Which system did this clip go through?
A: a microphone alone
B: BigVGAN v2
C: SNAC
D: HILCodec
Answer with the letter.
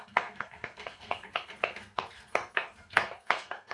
C